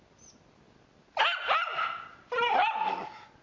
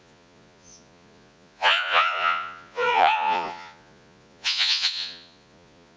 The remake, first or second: second